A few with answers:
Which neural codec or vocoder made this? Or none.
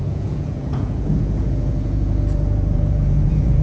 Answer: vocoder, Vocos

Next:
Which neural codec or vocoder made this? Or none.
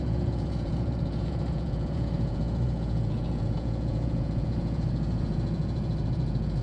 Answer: vocoder, Vocos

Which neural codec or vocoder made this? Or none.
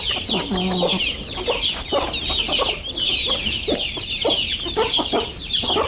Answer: none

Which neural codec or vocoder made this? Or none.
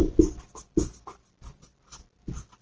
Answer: none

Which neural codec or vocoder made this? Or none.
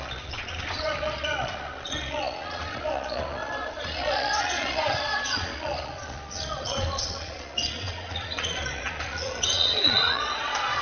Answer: vocoder, Vocos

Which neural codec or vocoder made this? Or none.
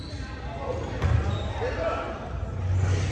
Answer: none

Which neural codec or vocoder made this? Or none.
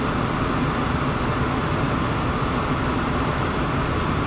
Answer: none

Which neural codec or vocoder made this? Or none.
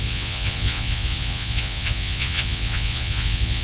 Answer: vocoder, Vocos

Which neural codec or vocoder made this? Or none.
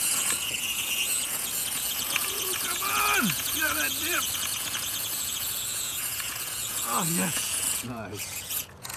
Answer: vocoder, Vocos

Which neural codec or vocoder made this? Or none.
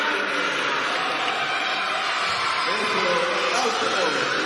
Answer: none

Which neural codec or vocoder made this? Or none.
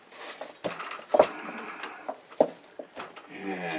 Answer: none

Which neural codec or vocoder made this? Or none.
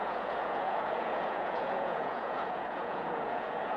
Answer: vocoder, Vocos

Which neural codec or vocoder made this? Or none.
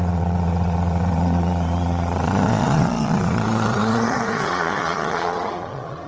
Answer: vocoder, Vocos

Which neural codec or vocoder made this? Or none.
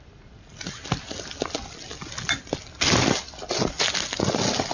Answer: none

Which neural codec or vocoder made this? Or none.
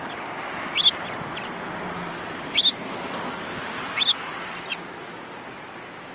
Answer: none